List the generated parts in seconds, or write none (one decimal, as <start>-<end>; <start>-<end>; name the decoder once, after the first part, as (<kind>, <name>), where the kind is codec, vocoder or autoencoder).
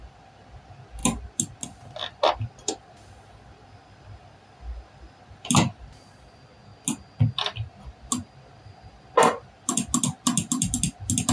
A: none